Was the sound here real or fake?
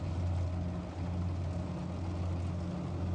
real